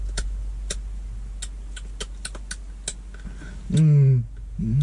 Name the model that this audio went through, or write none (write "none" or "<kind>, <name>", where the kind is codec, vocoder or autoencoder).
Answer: none